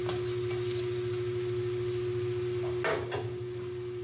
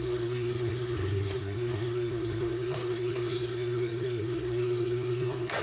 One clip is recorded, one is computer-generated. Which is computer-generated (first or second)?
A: second